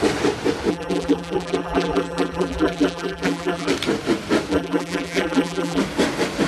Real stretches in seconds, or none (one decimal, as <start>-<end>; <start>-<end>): 0.0-0.7; 3.7-4.5; 5.8-6.5